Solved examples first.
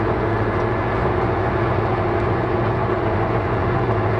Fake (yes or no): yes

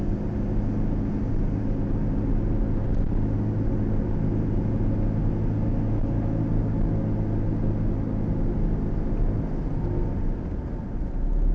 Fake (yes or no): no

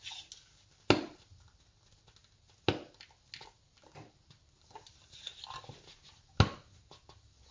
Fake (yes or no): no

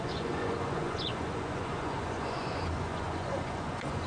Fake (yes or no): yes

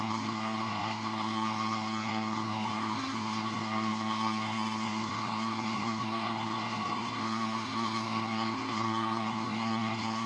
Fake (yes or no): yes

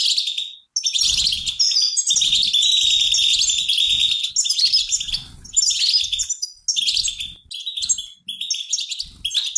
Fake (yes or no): no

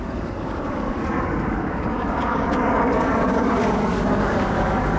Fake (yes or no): yes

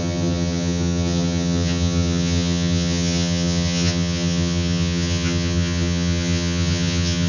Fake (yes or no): yes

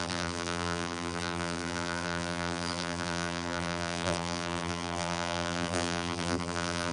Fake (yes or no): yes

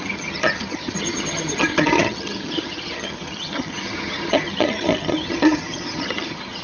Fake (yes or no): yes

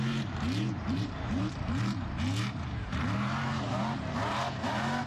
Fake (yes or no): yes